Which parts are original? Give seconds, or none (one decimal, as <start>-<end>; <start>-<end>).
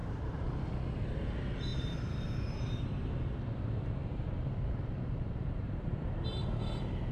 0.7-1.7; 3.1-4.0; 6.4-7.1